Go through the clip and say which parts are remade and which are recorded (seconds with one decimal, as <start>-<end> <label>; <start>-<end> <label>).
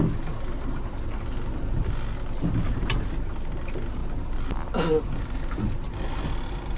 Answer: 0.0-6.8 recorded